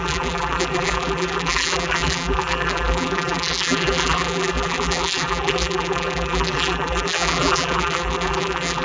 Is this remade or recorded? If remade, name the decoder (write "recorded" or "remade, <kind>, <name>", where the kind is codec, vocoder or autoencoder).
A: remade, vocoder, BigVGAN v2